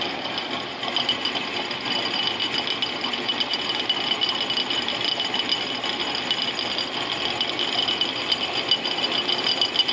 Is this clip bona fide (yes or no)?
yes